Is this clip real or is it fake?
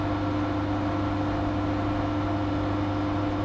real